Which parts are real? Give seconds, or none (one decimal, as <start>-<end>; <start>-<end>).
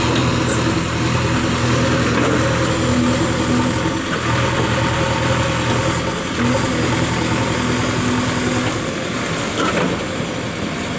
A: 0.0-11.0